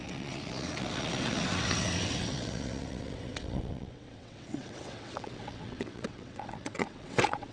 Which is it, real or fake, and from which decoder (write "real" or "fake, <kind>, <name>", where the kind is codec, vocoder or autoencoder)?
fake, vocoder, WaveNeXt